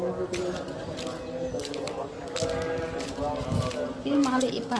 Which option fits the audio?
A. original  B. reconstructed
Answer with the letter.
A